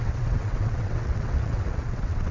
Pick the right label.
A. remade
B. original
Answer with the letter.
A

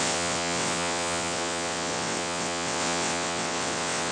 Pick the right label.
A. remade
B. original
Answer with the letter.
A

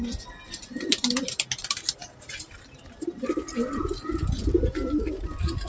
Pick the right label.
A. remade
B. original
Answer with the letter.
B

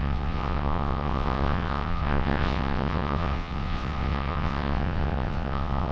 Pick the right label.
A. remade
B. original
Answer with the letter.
A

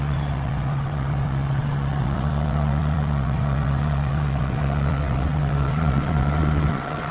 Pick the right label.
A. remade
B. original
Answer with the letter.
A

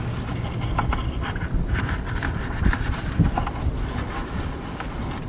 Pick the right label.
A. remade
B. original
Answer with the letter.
B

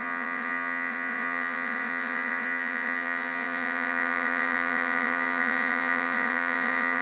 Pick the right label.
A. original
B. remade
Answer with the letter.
B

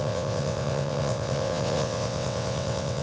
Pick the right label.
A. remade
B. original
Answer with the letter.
A